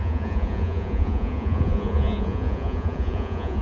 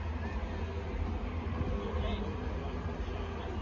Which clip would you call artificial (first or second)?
first